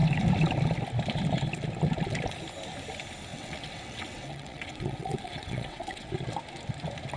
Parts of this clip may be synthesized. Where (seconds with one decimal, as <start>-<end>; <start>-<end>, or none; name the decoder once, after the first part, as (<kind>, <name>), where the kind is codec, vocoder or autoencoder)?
3.3-6.1 (vocoder, WaveNeXt)

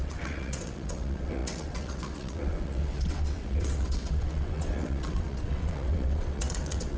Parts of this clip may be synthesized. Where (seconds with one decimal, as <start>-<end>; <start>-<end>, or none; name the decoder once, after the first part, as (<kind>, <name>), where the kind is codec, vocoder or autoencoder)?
0.0-7.0 (vocoder, WaveNeXt)

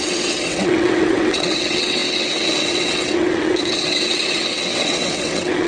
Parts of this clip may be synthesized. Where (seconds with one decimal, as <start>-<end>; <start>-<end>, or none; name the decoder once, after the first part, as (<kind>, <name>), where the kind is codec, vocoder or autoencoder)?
0.0-5.7 (vocoder, WaveNeXt)

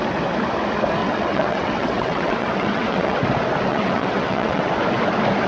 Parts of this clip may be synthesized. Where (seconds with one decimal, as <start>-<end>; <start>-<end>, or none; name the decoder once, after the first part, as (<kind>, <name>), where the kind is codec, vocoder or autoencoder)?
1.0-3.2 (vocoder, WaveNeXt); 3.7-4.7

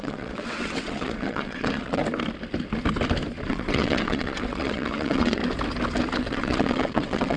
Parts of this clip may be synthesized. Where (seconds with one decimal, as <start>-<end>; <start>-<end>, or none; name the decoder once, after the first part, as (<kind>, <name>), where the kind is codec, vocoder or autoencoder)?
0.0-2.0 (vocoder, WaveNeXt); 3.5-5.4; 6.2-7.4

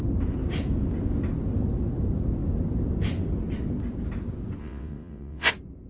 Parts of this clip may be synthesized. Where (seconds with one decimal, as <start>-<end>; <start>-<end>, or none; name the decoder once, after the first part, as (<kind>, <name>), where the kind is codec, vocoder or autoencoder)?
4.6-5.5 (vocoder, WaveNeXt)